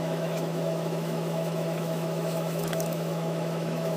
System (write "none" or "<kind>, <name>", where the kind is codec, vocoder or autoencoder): autoencoder, DAC-VAE